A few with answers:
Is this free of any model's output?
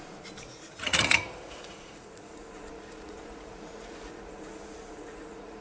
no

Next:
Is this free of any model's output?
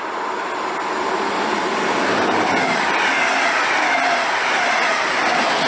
yes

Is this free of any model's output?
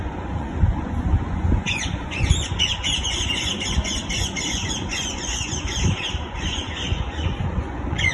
no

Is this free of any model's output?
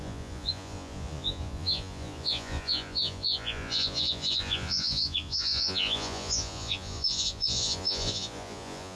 no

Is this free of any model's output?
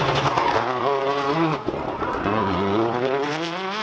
no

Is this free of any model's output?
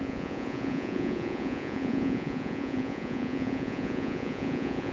no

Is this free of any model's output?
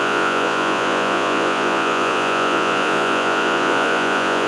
no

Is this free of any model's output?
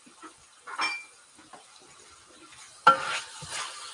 yes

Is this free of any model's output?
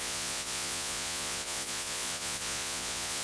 no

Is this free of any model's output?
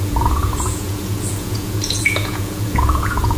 no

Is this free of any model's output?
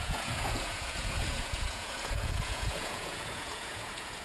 no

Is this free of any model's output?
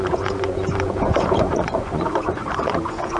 no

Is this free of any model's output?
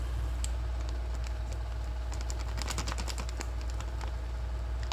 yes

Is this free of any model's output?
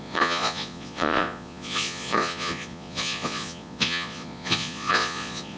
no